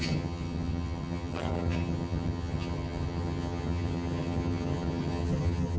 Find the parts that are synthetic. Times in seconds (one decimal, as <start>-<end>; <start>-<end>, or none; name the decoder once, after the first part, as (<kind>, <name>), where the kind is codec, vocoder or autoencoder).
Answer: 0.0-5.8 (vocoder, HiFi-GAN)